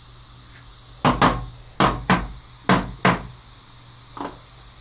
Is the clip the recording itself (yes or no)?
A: yes